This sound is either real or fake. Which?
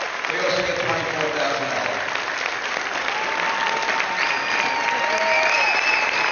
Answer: real